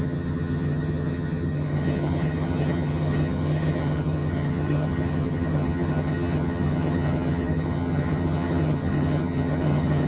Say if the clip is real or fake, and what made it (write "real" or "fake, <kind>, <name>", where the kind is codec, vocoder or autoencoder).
fake, vocoder, HiFi-GAN